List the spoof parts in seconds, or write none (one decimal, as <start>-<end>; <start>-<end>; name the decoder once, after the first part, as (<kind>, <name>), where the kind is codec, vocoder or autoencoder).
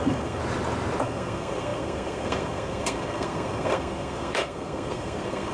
0.0-0.4 (codec, SNAC); 1.0-5.5